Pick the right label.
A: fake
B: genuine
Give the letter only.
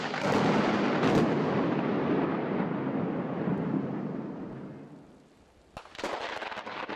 B